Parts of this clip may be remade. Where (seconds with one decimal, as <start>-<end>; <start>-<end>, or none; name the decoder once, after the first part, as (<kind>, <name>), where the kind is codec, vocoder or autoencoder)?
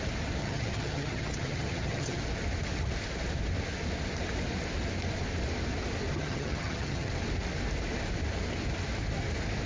0.4-2.2 (vocoder, HiFi-GAN); 6.2-7.1